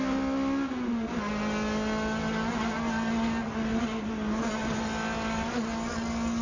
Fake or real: real